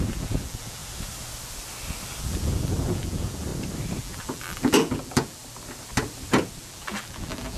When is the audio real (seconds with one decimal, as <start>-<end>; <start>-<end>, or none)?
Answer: 0.8-2.2; 3.5-4.0; 5.4-6.6